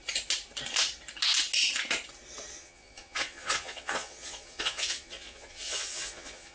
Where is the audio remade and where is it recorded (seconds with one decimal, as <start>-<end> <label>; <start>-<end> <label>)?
0.0-2.5 recorded; 2.5-6.5 remade